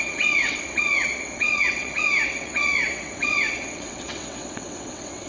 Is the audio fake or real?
fake